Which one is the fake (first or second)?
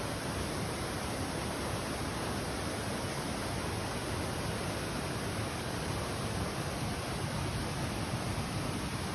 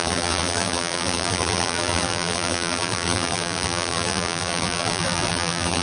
second